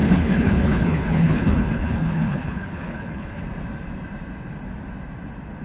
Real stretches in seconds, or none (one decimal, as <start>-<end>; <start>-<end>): 3.4-5.6